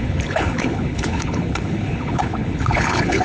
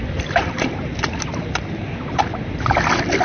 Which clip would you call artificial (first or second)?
first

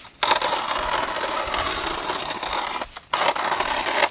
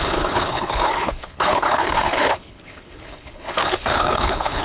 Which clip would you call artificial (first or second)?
second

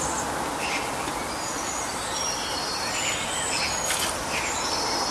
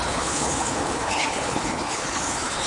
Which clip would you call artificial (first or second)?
second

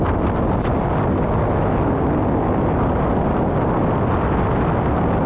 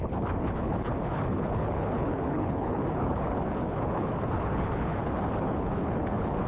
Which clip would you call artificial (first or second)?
second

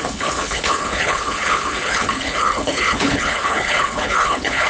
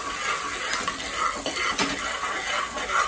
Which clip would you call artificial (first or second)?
first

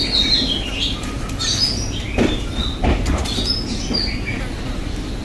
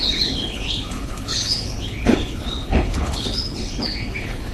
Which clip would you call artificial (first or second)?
second